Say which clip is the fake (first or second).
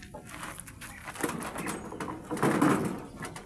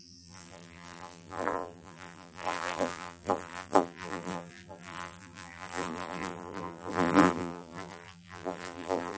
second